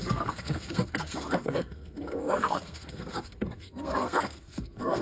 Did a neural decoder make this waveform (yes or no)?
yes